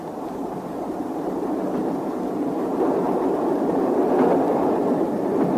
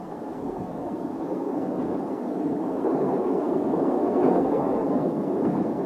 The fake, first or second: second